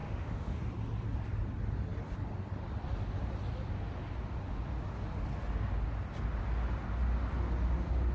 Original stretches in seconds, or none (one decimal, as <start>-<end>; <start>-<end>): 0.6-8.1